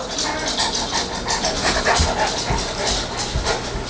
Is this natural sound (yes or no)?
yes